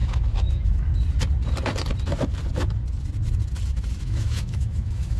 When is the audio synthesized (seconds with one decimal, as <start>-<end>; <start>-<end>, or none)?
0.0-0.9; 4.0-5.2